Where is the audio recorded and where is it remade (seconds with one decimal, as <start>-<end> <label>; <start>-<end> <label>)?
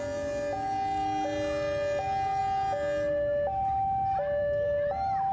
0.0-5.3 recorded